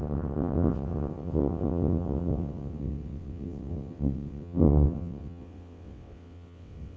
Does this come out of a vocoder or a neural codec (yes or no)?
yes